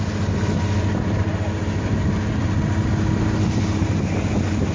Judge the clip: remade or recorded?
recorded